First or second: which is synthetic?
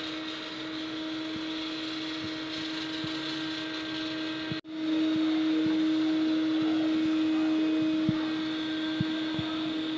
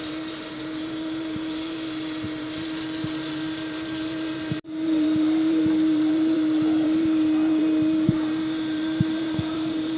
second